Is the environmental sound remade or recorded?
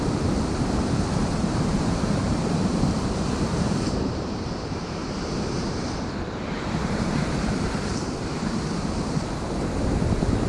remade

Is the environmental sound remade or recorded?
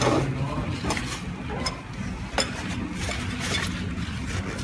recorded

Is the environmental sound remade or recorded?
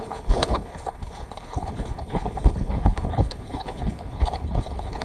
remade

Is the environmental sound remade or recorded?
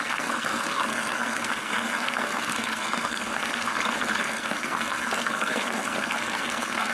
remade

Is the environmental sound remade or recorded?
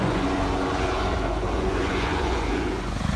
remade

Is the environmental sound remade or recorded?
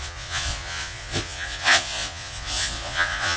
remade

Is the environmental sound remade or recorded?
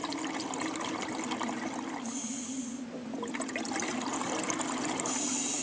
recorded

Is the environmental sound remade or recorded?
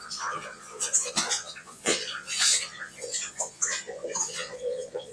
remade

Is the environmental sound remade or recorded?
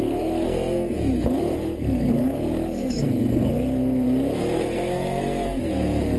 remade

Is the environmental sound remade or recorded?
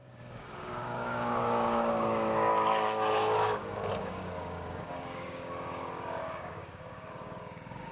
remade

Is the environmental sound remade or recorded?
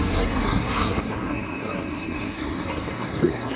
remade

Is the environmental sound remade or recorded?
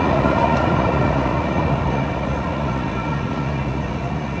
remade